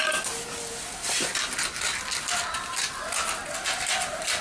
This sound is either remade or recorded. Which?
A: recorded